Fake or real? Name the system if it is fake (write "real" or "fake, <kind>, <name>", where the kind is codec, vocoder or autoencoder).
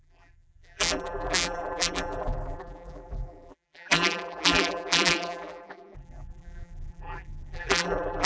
fake, vocoder, BigVGAN v2